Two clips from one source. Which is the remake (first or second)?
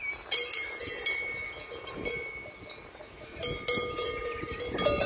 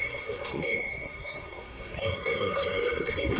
second